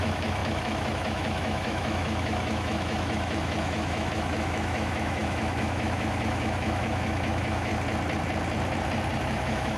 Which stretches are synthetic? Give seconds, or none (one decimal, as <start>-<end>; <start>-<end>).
0.0-7.7; 9.2-9.8